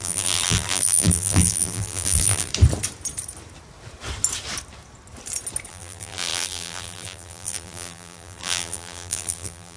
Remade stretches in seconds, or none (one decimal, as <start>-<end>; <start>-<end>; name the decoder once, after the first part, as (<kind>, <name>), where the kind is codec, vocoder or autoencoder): 0.0-2.5 (vocoder, BigVGAN v2); 5.7-9.8